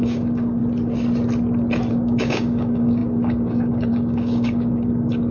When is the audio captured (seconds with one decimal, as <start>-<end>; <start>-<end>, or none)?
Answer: 0.6-1.9